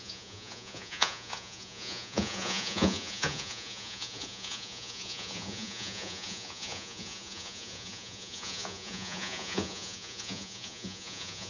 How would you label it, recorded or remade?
remade